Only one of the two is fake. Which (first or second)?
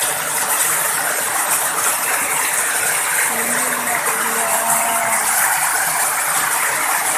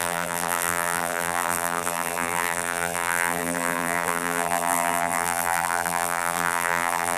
second